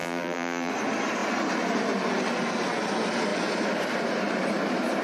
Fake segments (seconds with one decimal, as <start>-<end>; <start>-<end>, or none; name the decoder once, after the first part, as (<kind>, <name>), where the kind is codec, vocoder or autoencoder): 0.0-0.7 (vocoder, BigVGAN v2)